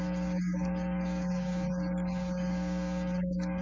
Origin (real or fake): fake